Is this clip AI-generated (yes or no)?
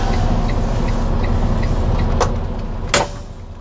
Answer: no